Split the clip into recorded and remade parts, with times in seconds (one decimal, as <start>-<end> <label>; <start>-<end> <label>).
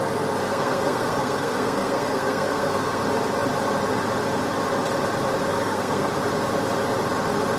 0.0-0.4 recorded; 0.4-3.0 remade; 3.0-5.5 recorded; 5.5-6.1 remade; 6.1-7.6 recorded